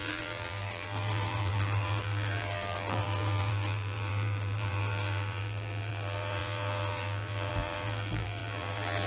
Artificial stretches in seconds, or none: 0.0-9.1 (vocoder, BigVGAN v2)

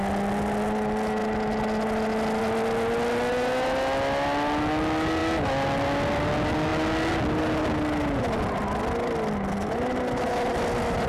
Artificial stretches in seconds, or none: none

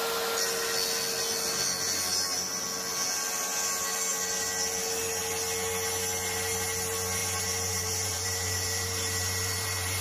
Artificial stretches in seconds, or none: 7.2-10.0 (vocoder, BigVGAN v2)

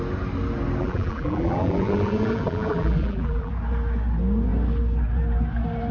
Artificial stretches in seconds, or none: 0.8-3.5 (vocoder, BigVGAN v2)

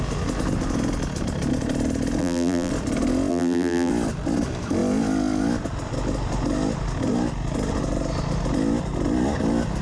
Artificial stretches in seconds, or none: 2.2-2.7 (vocoder, BigVGAN v2); 3.3-3.9

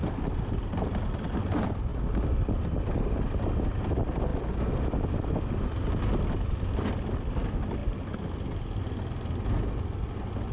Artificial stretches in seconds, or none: none

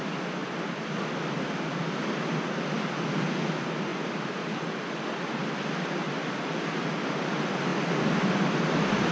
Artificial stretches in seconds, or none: 0.4-1.1 (vocoder, BigVGAN v2); 3.9-5.4

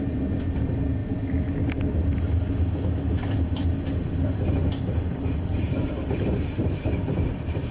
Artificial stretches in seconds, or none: 4.6-6.9 (vocoder, BigVGAN v2)